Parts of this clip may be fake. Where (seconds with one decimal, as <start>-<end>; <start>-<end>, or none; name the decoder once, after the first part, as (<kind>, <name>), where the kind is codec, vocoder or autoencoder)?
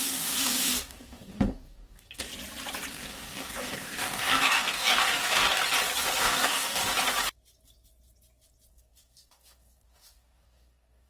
0.0-2.3 (codec, DAC); 2.9-5.6; 6.2-6.8; 8.7-11.1